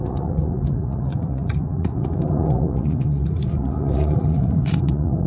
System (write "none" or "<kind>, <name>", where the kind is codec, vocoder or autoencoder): vocoder, Vocos